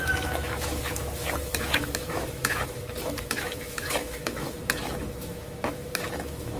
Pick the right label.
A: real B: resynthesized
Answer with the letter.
B